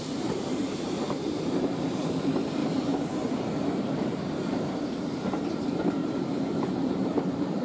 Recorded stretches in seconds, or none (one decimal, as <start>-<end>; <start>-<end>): 2.6-3.8